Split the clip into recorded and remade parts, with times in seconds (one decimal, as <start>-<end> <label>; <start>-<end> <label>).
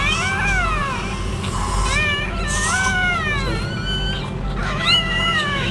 0.0-4.6 recorded; 4.6-5.7 remade